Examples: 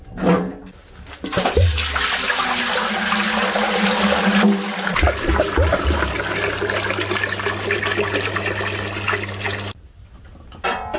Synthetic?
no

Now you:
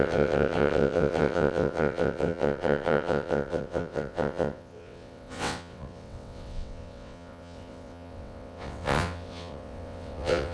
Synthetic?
yes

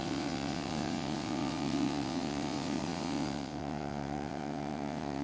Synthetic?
yes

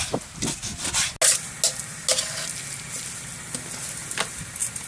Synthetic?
no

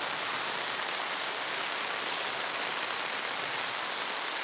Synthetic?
no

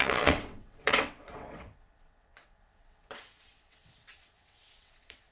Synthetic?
yes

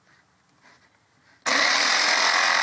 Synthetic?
no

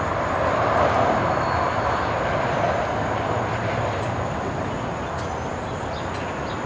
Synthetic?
no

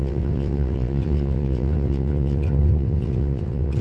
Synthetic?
yes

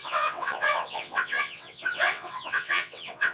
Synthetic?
yes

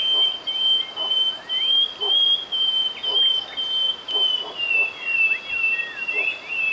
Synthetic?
no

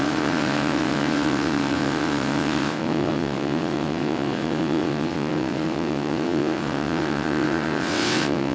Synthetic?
yes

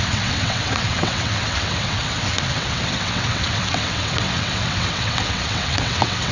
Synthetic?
yes